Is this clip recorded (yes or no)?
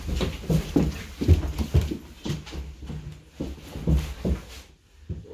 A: yes